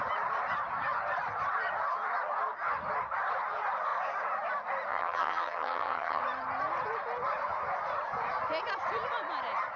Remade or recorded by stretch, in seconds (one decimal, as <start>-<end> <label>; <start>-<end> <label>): 0.0-4.9 recorded; 4.9-6.2 remade; 6.2-9.8 recorded